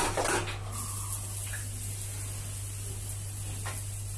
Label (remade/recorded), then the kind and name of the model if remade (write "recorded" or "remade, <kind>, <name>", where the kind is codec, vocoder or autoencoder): recorded